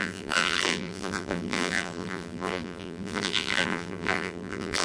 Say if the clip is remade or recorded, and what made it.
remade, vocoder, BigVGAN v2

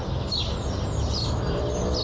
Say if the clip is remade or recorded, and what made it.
remade, vocoder, BigVGAN v2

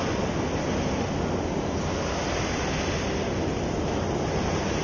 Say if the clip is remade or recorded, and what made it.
recorded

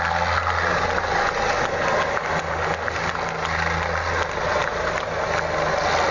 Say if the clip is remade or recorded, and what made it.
recorded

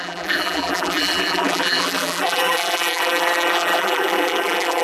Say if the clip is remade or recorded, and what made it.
remade, vocoder, BigVGAN v2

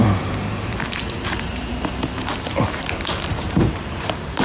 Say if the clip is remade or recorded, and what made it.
remade, vocoder, BigVGAN v2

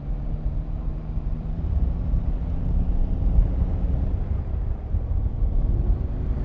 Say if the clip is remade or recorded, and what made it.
remade, vocoder, BigVGAN v2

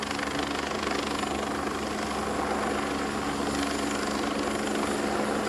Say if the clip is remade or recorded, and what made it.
recorded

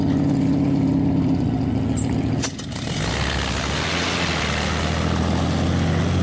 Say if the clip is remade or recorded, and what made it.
recorded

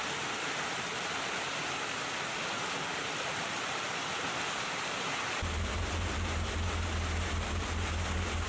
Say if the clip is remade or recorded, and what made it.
recorded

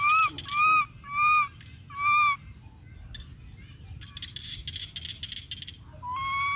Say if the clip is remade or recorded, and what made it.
recorded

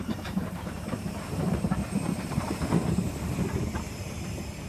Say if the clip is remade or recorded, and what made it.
remade, vocoder, BigVGAN v2